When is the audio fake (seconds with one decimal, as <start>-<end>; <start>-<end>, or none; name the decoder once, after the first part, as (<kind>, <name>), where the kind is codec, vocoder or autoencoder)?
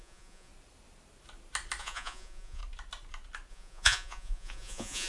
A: 0.0-0.5 (vocoder, Vocos); 1.8-2.6; 3.5-5.1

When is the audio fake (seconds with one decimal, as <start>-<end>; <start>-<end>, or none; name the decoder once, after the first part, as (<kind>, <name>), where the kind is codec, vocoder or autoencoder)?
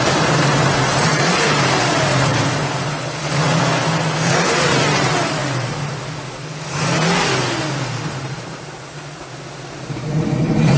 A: 0.0-2.3 (vocoder, BigVGAN v2); 4.5-5.4; 7.9-10.8